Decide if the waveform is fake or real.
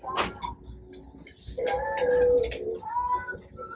real